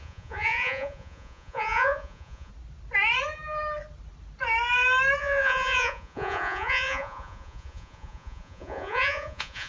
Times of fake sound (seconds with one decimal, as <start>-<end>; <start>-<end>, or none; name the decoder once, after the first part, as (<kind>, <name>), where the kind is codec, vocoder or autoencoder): 0.0-2.5 (vocoder, Vocos); 5.2-9.7